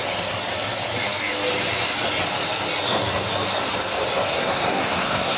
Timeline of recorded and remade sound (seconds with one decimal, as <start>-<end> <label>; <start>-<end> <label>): 0.0-4.3 recorded; 4.3-5.4 remade